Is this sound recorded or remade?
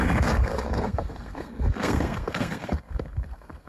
remade